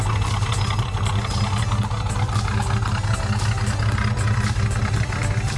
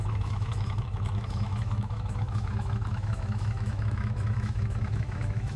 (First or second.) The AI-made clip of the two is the second